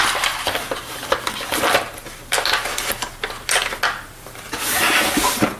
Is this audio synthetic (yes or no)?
no